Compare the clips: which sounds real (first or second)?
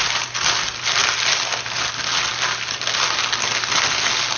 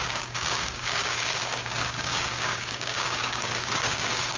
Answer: first